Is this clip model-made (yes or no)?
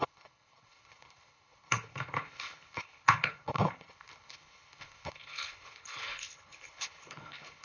yes